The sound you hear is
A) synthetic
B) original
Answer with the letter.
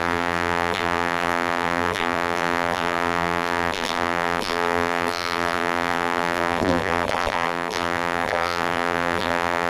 A